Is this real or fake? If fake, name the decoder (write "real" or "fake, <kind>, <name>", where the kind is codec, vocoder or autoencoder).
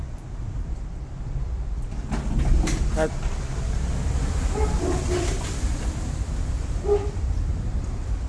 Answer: real